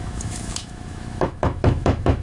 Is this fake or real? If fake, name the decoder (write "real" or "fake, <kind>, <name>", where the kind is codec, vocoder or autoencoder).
fake, autoencoder, DAC-VAE